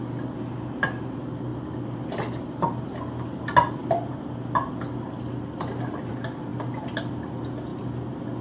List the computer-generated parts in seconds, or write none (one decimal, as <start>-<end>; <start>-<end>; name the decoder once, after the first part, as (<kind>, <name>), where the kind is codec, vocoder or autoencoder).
none

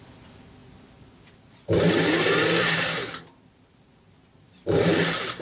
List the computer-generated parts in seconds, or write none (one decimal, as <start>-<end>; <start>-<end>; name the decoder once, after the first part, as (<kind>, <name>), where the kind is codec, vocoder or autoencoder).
none

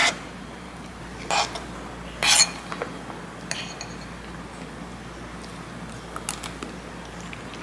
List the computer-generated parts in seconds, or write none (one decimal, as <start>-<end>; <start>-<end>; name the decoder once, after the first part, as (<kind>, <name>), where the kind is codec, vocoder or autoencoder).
0.0-1.0 (vocoder, BigVGAN v2)

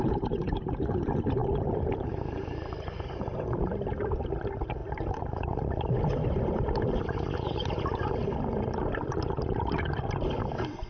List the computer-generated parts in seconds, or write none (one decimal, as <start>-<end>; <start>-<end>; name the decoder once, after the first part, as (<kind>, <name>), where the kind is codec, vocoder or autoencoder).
1.4-3.6 (vocoder, BigVGAN v2); 4.8-7.0